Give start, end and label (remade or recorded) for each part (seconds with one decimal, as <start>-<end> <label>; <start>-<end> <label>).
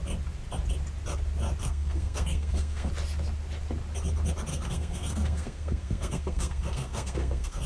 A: 0.0-1.6 recorded; 1.6-2.9 remade; 2.9-4.5 recorded; 4.5-7.7 remade